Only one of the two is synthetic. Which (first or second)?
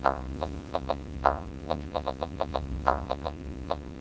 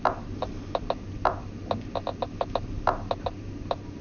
first